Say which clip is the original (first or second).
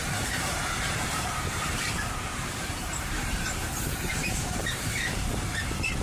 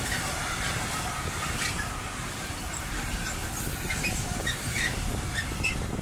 second